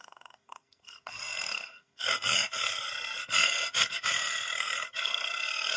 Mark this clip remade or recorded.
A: remade